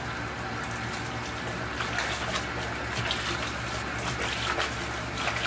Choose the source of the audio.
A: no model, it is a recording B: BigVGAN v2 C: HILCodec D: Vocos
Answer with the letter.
A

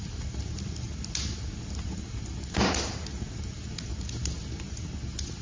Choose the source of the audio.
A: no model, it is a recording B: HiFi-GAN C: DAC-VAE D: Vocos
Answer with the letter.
A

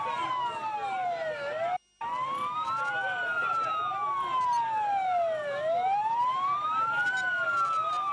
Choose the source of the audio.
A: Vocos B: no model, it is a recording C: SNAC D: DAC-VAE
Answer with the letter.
B